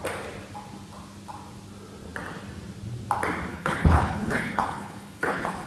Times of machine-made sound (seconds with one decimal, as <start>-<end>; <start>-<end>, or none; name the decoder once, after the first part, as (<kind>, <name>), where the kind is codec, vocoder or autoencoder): 3.5-5.7 (codec, HILCodec)